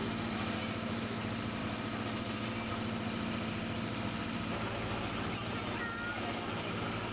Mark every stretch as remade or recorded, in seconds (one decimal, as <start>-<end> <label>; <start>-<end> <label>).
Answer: 0.0-7.1 recorded